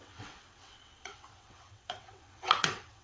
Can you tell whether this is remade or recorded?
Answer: remade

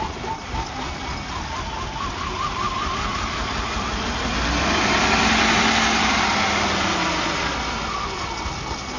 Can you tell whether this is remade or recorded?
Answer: recorded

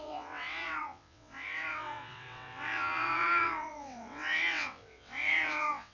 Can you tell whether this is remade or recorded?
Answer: remade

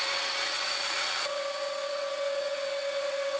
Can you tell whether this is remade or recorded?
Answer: remade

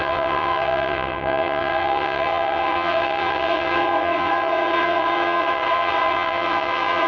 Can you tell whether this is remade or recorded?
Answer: remade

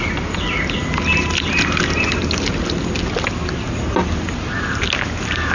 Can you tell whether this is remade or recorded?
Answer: recorded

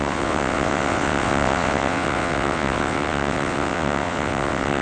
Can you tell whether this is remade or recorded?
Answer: remade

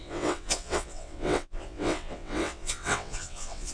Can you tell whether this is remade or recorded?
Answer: remade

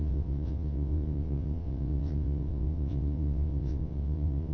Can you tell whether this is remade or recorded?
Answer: remade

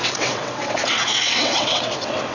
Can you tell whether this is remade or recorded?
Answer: remade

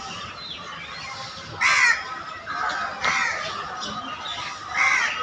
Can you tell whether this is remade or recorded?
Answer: recorded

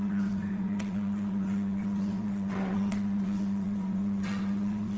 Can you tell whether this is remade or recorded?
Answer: remade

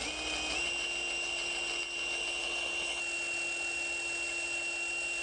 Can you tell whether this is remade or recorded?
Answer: recorded